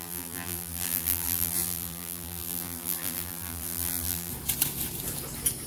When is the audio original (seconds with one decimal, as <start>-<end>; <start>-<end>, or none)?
4.3-5.7